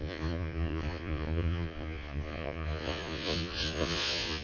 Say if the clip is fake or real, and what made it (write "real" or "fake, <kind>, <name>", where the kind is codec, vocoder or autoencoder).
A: fake, vocoder, Vocos